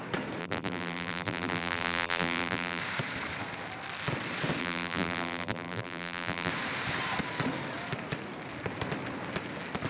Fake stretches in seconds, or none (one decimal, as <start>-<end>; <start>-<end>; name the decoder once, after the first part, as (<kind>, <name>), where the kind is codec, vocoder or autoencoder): 0.4-2.8 (vocoder, BigVGAN v2); 4.6-6.5